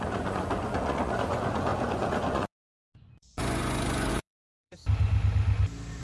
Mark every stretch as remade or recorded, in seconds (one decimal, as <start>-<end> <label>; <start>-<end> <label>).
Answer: 0.0-4.8 remade; 4.8-6.0 recorded